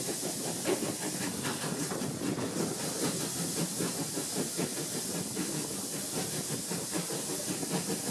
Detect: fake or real real